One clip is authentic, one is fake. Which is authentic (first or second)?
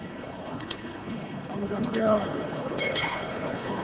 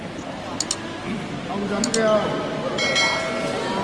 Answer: second